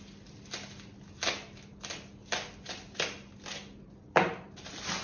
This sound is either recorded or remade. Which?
recorded